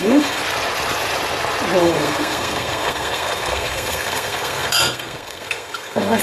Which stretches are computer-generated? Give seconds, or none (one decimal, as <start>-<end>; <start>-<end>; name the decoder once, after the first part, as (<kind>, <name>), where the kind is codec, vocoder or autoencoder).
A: 0.0-0.4 (codec, SNAC); 1.8-6.2